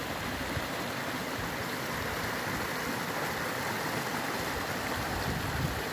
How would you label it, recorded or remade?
recorded